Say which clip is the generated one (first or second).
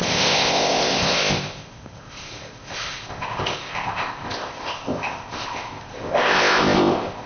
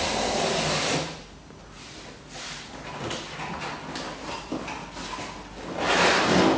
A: first